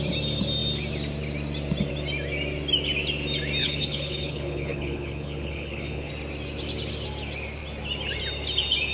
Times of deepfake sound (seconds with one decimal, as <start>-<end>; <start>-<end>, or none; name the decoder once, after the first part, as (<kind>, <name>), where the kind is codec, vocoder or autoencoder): 3.6-6.1 (codec, HILCodec)